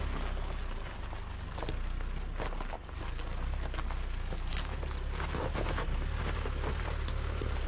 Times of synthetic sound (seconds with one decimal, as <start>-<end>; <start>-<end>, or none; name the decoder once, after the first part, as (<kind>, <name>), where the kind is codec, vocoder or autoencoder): none